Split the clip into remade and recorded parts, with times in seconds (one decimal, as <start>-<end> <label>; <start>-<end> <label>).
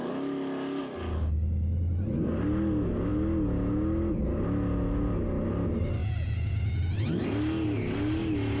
0.0-6.0 recorded; 6.0-6.8 remade; 6.8-8.6 recorded